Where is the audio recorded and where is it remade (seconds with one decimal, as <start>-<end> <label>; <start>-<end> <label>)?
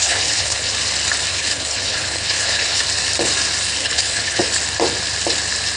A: 0.0-0.7 remade; 0.7-1.3 recorded; 1.3-2.8 remade; 2.8-3.8 recorded; 3.8-4.4 remade; 4.4-5.8 recorded